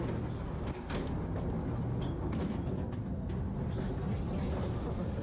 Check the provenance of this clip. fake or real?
real